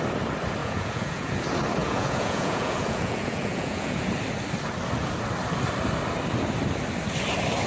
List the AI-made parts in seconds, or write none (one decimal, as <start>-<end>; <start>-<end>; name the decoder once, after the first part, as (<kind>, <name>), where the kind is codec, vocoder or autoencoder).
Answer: 0.6-1.4 (vocoder, Vocos); 1.8-4.0